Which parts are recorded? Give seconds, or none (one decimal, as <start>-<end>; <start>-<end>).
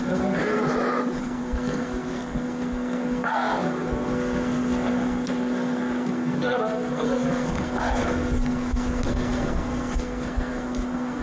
0.6-1.2